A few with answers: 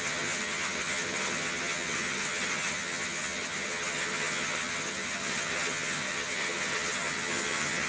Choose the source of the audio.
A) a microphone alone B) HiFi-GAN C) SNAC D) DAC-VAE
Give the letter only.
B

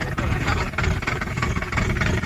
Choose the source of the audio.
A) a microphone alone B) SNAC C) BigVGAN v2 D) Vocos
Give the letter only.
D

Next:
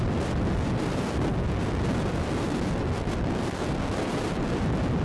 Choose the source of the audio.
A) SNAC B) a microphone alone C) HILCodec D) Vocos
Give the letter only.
B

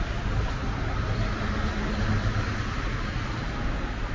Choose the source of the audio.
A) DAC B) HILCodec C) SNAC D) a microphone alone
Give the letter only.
D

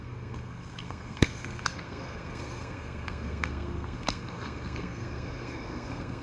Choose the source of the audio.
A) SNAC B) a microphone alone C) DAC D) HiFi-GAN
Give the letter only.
A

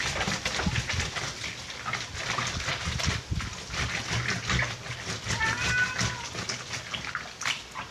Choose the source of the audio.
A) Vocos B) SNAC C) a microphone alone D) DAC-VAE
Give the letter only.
C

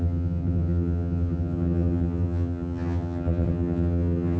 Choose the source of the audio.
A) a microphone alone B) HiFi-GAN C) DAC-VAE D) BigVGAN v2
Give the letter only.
B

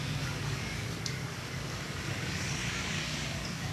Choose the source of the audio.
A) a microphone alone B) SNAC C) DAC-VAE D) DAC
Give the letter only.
D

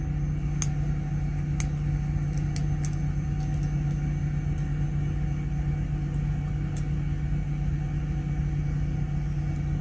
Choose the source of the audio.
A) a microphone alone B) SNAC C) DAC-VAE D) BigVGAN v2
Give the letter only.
A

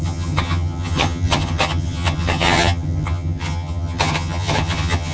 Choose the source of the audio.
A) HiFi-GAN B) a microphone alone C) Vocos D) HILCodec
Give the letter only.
A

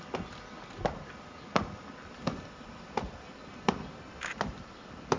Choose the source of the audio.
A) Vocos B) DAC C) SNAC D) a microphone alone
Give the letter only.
D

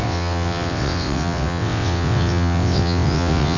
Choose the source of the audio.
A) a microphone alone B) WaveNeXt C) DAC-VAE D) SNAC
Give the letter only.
B